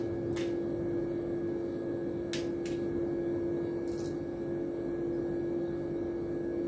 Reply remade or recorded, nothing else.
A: recorded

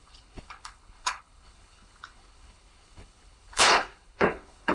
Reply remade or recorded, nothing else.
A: remade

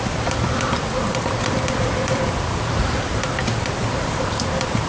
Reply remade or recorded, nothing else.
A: remade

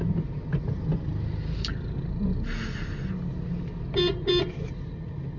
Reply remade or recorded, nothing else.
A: recorded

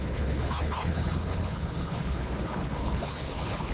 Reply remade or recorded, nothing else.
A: remade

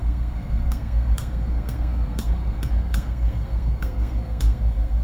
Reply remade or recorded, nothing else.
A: remade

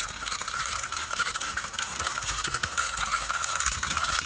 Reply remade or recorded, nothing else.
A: remade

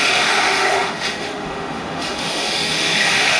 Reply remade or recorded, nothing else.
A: remade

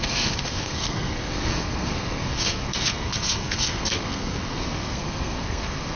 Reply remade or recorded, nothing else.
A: remade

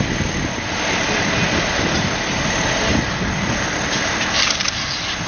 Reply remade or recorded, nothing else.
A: recorded